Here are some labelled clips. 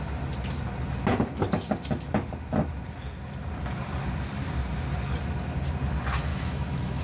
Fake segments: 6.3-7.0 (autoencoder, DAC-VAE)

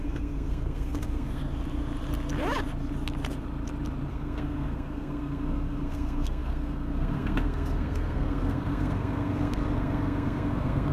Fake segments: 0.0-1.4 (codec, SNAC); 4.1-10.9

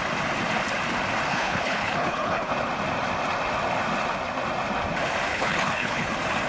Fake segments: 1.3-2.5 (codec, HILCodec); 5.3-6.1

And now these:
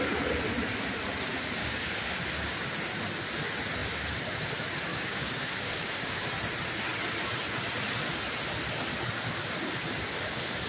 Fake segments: 1.6-2.2 (codec, DAC); 4.9-6.2

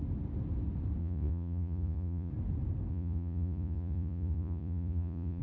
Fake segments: 1.0-2.3 (vocoder, Vocos); 2.9-5.4

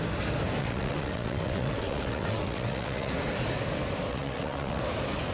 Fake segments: 0.6-3.1 (vocoder, WaveNeXt); 4.1-4.8

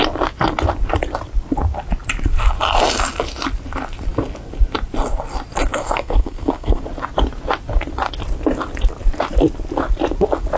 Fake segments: 5.7-6.8 (codec, SNAC)